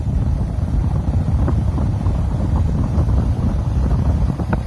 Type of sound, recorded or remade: remade